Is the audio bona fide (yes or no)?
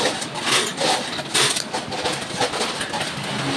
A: yes